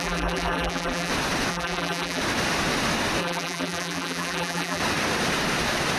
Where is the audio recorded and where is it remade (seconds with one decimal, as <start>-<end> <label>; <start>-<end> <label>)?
0.0-1.1 remade; 1.1-1.5 recorded; 1.5-2.2 remade; 2.2-3.2 recorded; 3.2-4.8 remade; 4.8-6.0 recorded